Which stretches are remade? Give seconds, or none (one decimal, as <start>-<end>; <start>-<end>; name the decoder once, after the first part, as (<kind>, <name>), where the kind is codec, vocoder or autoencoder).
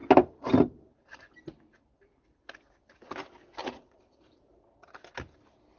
3.6-4.3 (vocoder, Vocos)